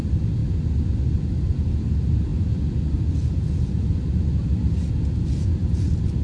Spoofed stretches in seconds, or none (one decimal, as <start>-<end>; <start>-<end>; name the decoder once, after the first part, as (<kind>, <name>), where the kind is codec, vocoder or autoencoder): none